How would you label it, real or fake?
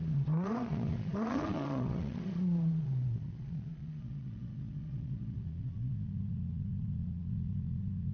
fake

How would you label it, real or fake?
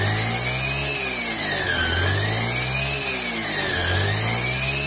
real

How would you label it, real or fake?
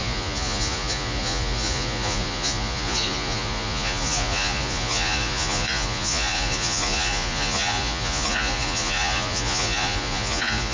fake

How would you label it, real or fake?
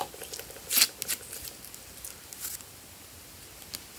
real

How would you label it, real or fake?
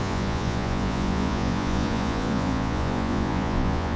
fake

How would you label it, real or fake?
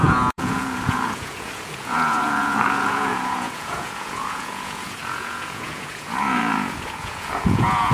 fake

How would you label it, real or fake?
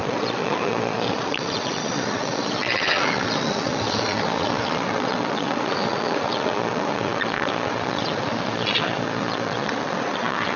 fake